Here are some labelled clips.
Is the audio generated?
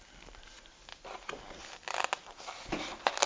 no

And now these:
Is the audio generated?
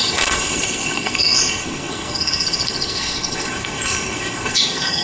yes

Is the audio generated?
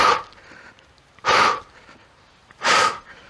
yes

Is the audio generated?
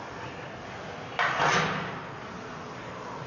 no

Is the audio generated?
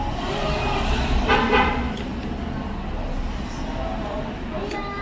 no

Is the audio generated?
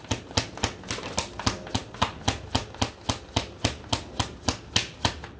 no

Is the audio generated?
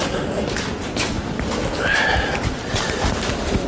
no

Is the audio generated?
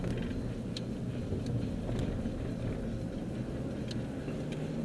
no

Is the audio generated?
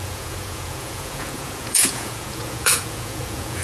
yes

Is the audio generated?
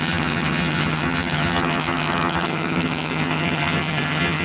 yes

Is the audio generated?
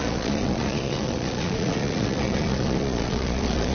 yes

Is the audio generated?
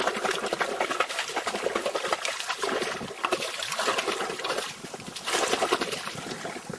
no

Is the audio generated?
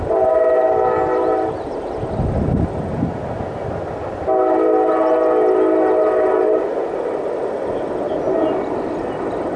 no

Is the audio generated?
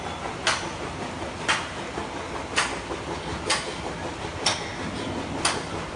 no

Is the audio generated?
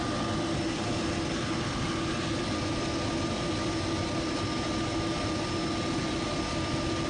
no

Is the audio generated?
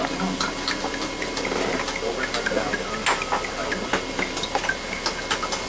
no